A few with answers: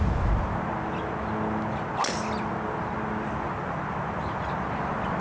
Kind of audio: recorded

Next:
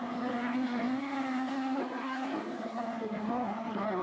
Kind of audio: remade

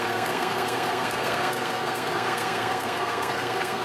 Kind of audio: remade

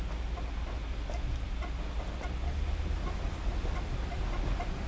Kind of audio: recorded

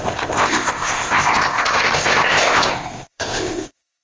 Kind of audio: remade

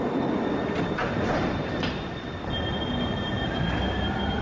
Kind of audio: recorded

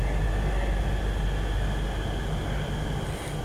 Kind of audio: recorded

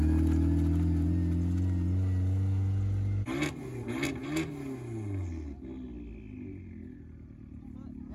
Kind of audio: recorded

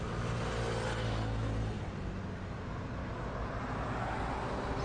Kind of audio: recorded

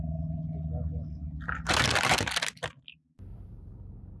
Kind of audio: recorded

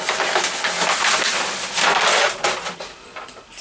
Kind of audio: recorded